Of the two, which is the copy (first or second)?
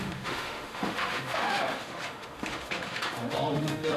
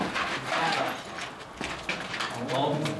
first